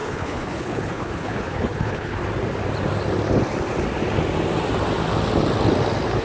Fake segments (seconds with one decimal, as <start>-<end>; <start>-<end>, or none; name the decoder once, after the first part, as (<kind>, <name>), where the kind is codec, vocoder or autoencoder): 0.0-2.2 (codec, HILCodec)